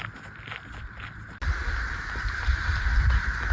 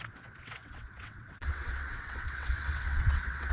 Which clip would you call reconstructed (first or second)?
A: second